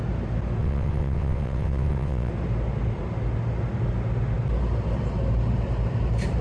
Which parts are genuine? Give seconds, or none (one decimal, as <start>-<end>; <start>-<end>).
0.0-0.6; 2.3-6.4